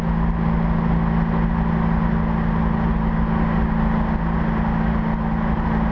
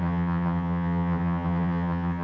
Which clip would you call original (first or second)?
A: first